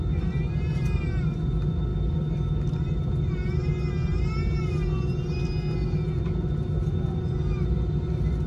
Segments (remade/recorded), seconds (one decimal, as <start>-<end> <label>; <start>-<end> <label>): 0.0-4.0 recorded; 4.0-4.6 remade; 4.6-8.5 recorded